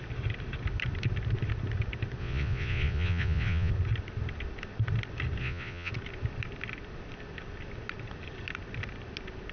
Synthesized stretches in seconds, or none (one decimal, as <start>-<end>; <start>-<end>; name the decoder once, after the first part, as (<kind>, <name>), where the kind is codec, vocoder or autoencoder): 2.2-3.7 (vocoder, Vocos); 5.4-5.9